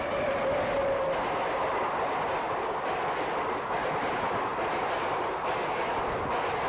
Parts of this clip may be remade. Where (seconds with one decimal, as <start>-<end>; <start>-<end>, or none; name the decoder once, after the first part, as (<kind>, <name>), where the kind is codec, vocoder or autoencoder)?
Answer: none